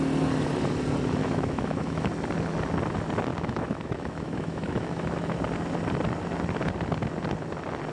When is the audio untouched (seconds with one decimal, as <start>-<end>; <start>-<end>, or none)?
0.0-1.2; 2.1-3.3; 5.4-7.9